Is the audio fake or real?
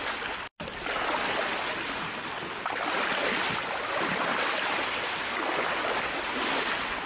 real